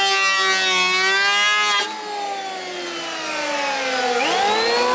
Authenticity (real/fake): real